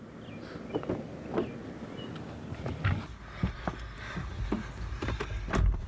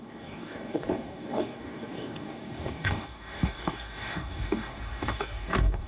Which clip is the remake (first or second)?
second